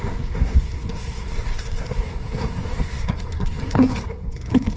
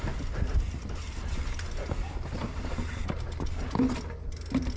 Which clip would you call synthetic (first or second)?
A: first